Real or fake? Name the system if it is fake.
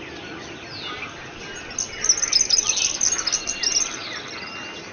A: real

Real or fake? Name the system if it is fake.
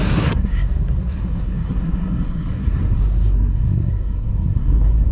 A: fake, codec, SNAC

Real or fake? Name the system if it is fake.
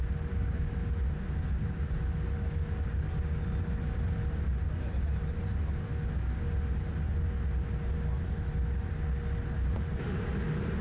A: real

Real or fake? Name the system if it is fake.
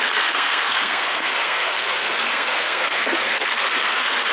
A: fake, codec, SNAC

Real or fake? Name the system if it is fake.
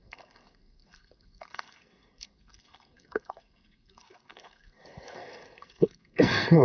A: fake, codec, SNAC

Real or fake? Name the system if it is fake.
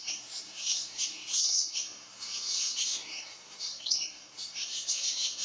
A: fake, codec, SNAC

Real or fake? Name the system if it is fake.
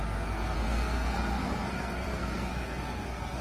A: fake, codec, SNAC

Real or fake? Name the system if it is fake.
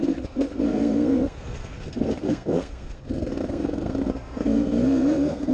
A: fake, codec, SNAC